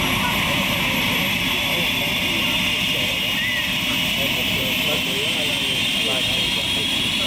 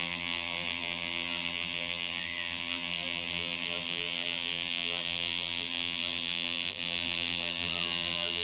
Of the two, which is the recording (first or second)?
first